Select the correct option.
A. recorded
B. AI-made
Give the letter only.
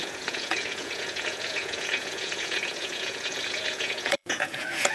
B